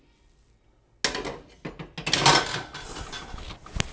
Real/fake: real